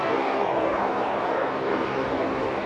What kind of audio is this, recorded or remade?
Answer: remade